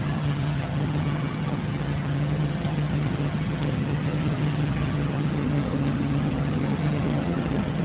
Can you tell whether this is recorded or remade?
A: remade